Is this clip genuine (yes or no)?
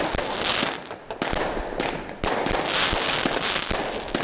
yes